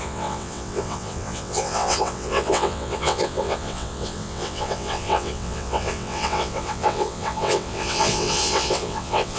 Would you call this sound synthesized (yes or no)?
yes